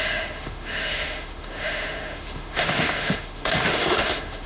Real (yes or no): no